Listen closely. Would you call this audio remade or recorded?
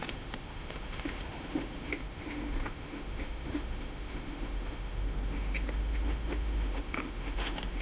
remade